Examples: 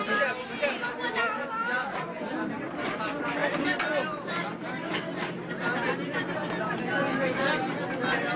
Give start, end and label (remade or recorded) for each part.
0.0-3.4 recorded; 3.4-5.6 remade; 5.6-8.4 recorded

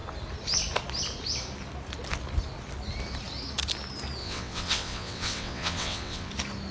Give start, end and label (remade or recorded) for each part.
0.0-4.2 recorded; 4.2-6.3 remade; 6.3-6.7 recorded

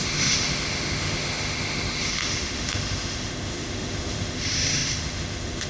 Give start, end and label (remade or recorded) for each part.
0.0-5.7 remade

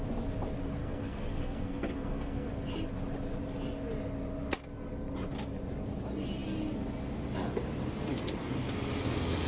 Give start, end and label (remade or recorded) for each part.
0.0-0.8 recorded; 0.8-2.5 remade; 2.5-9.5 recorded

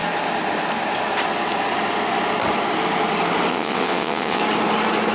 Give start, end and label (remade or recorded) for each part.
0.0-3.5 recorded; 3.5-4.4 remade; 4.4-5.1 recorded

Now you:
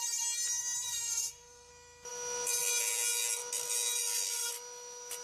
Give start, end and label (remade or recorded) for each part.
0.0-0.9 recorded; 0.9-1.7 remade; 1.7-5.2 recorded

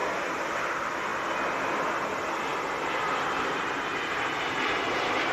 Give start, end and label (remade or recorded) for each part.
0.0-1.1 remade; 1.1-2.1 recorded; 2.1-2.5 remade; 2.5-4.6 recorded; 4.6-5.3 remade